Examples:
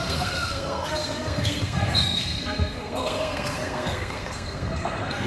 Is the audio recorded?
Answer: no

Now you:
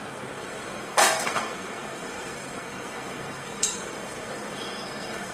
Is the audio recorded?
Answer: no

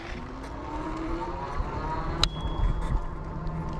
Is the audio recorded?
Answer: yes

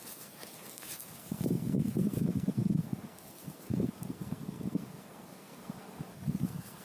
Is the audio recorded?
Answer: no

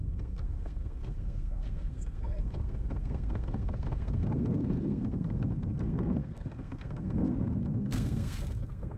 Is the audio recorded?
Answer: no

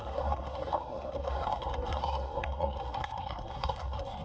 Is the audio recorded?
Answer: no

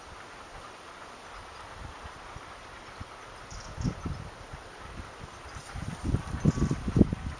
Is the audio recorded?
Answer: yes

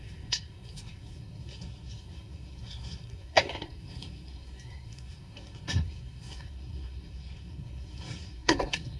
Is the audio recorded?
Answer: no